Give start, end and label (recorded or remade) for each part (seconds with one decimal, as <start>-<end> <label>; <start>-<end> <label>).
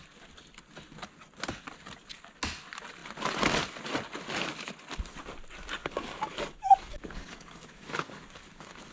0.0-5.8 recorded; 5.8-8.9 remade